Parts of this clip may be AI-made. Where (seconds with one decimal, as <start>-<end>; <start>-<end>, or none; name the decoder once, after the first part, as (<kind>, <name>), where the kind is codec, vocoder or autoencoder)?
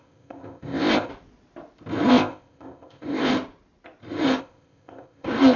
0.0-1.1 (codec, ZipCodec); 2.1-3.3; 4.4-5.6